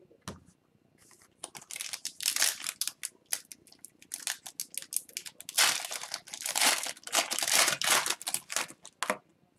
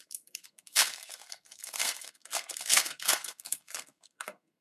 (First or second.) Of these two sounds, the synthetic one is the second